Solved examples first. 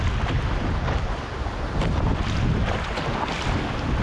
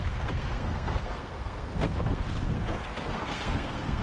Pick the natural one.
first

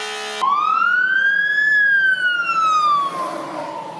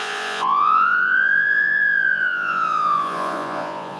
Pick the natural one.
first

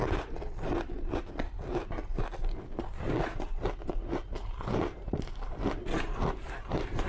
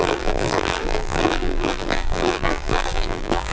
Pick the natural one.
first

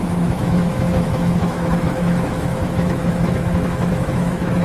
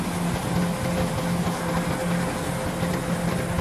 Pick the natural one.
second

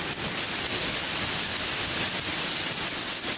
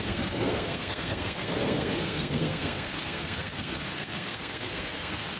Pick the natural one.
first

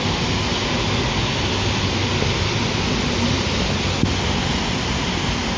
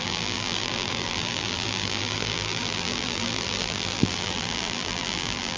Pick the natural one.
first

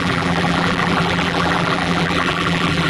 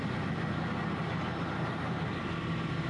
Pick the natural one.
second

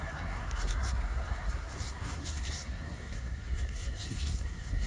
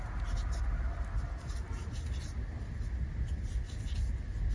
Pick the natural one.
second